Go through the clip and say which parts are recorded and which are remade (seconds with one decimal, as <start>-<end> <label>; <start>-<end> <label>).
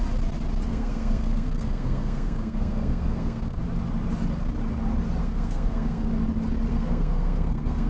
0.0-0.7 recorded; 0.7-3.6 remade; 3.6-5.2 recorded; 5.2-6.1 remade; 6.1-6.7 recorded; 6.7-7.9 remade